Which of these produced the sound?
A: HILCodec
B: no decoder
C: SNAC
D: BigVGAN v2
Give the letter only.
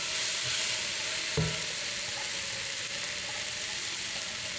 B